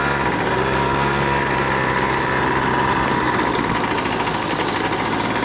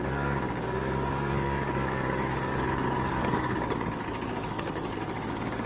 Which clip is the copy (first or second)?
second